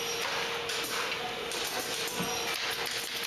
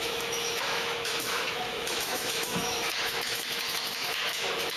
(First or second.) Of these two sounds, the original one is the first